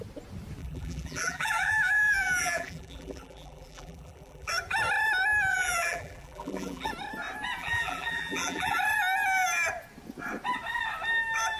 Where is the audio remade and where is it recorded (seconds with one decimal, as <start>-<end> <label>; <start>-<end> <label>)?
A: 0.0-0.6 recorded; 0.6-4.5 remade; 4.5-5.5 recorded; 5.5-6.9 remade; 6.9-7.6 recorded; 7.6-8.8 remade; 8.8-11.6 recorded